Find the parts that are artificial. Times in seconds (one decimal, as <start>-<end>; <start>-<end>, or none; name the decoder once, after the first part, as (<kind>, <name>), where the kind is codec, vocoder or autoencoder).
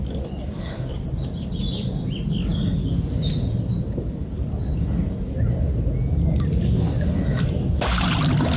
none